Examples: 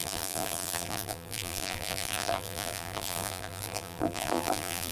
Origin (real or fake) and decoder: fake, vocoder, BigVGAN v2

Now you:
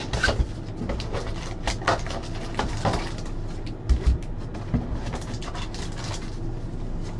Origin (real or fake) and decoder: real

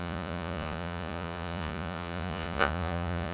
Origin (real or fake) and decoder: fake, vocoder, Vocos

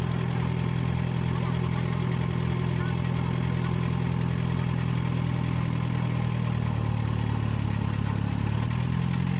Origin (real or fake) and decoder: real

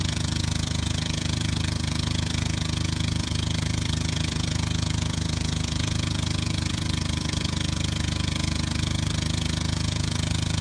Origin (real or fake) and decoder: fake, vocoder, Vocos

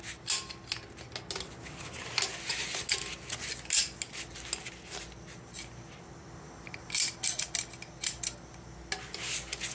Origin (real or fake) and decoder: real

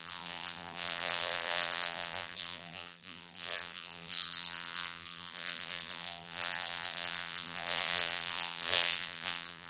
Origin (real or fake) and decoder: fake, vocoder, BigVGAN v2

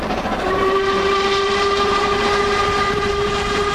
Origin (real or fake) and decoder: fake, vocoder, BigVGAN v2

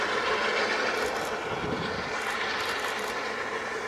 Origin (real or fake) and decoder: real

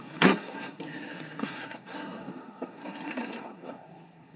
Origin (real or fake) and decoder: fake, codec, SNAC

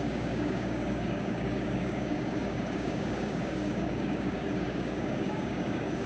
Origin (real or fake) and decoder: fake, codec, DAC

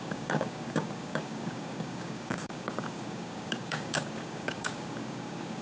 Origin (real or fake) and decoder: fake, codec, DAC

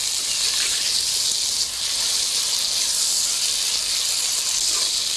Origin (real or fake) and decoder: real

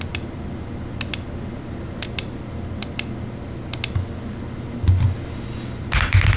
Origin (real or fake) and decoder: real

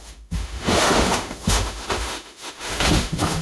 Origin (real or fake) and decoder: fake, autoencoder, DAC-VAE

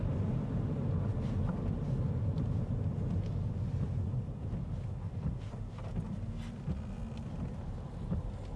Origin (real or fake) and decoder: real